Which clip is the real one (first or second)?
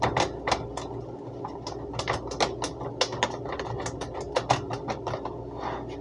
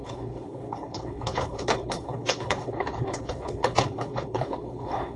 first